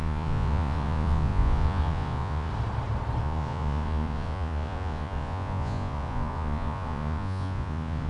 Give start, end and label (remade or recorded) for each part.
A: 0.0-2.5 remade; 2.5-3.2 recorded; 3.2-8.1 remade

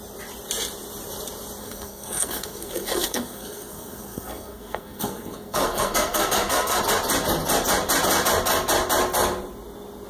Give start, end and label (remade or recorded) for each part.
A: 0.0-1.6 recorded; 1.6-6.8 remade; 6.8-10.1 recorded